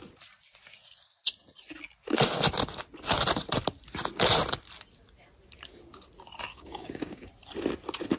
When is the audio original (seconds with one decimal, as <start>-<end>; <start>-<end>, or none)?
0.0-6.5; 7.3-8.2